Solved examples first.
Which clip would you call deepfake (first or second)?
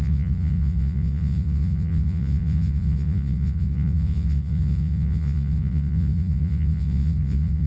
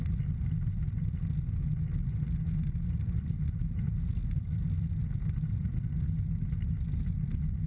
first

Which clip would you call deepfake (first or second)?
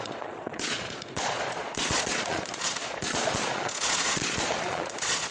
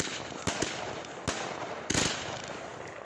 first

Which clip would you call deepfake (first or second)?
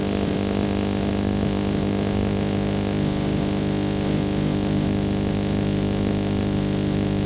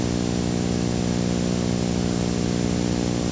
first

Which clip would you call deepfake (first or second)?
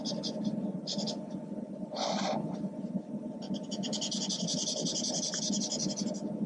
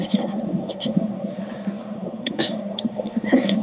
second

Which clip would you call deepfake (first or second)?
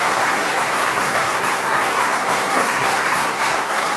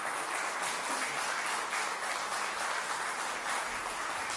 first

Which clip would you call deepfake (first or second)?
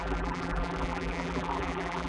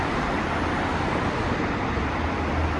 first